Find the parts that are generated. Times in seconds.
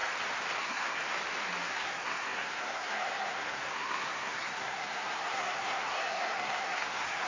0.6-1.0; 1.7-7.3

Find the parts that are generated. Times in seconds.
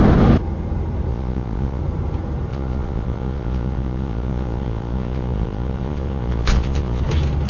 1.1-1.8; 2.5-7.0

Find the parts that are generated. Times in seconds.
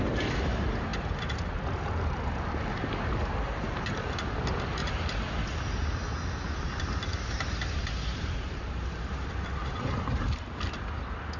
0.9-4.3; 4.8-5.3; 8.1-9.0; 9.6-10.4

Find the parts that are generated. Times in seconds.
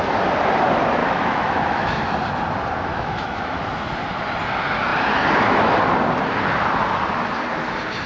1.0-2.0; 2.9-3.6